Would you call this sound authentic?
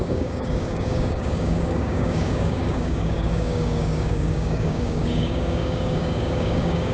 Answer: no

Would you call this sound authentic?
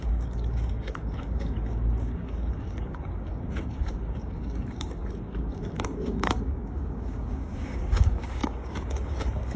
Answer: no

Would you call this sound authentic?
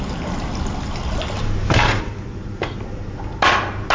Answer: yes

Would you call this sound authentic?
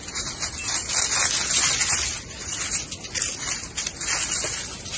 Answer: yes